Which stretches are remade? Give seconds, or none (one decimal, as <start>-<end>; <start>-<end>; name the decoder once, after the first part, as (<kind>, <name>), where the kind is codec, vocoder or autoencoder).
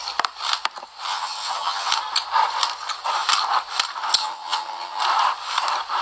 1.1-1.9 (vocoder, HiFi-GAN); 4.2-5.0